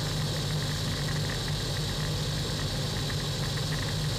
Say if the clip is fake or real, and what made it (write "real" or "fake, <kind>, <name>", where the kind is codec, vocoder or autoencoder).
real